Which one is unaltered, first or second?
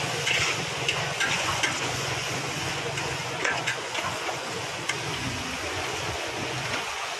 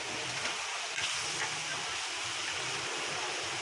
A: second